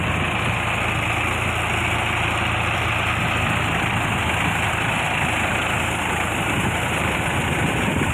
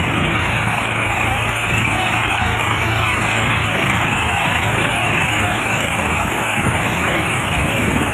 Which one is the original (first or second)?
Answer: first